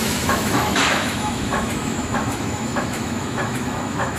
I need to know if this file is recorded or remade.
remade